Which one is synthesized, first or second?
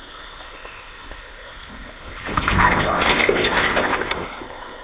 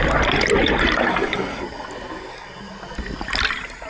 first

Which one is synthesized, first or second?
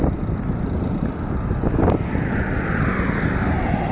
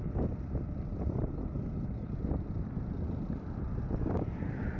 second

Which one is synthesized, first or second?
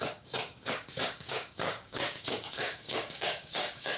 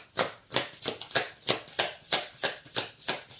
first